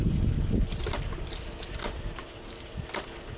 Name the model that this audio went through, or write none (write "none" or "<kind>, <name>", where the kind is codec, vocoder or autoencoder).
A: none